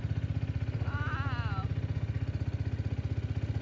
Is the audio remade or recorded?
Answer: recorded